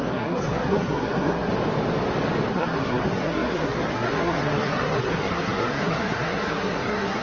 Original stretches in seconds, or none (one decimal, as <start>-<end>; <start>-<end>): 1.5-2.5